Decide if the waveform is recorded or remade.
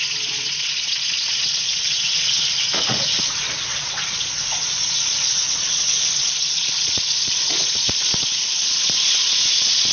remade